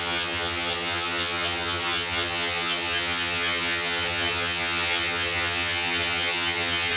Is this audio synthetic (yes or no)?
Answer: yes